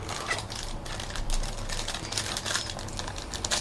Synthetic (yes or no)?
no